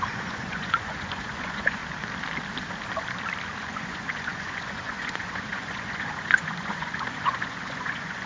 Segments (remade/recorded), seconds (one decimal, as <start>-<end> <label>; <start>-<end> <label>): 0.0-1.8 remade; 1.8-3.6 recorded; 3.6-8.3 remade